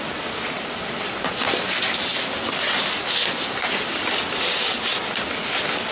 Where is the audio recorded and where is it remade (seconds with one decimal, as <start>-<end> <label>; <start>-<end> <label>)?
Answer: 0.0-5.9 recorded